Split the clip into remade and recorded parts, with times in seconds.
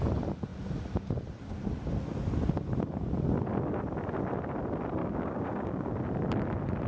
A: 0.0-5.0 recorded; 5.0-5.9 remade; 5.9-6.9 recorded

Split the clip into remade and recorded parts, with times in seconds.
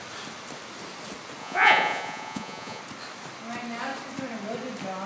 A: 0.0-1.4 recorded; 1.4-2.8 remade; 2.8-5.1 recorded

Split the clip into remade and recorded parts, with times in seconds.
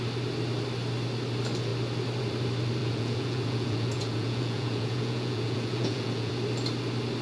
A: 0.0-2.8 recorded; 2.8-6.3 remade; 6.3-7.2 recorded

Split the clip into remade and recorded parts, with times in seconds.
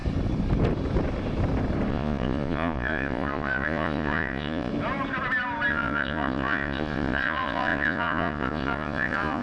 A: 0.0-1.9 recorded; 1.9-4.7 remade; 4.7-5.7 recorded; 5.7-9.4 remade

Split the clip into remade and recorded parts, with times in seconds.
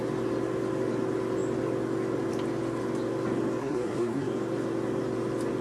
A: 0.0-3.6 recorded; 3.6-4.3 remade; 4.3-5.6 recorded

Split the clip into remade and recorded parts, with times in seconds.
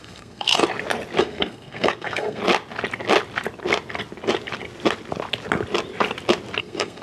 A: 0.0-0.5 remade; 0.5-1.2 recorded; 1.2-2.4 remade; 2.4-6.6 recorded; 6.6-7.0 remade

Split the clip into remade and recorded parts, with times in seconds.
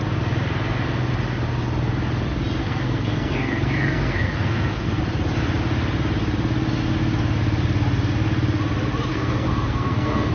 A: 0.0-2.6 recorded; 2.6-5.0 remade; 5.0-9.1 recorded; 9.1-10.3 remade